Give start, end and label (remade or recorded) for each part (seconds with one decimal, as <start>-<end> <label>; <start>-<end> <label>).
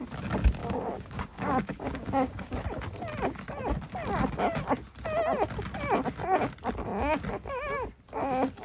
0.0-0.6 recorded; 0.6-2.6 remade; 2.6-8.6 recorded